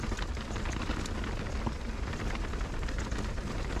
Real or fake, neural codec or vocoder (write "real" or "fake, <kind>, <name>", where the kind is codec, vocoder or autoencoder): real